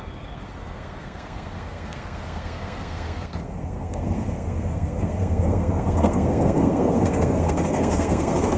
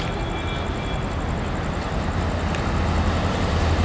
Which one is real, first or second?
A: second